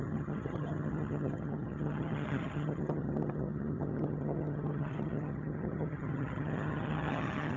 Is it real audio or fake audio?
fake